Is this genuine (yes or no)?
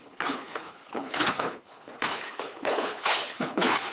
no